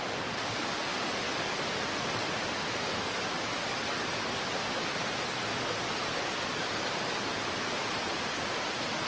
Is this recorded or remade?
recorded